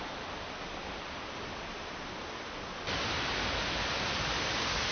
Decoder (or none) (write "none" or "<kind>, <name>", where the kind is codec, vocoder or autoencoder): none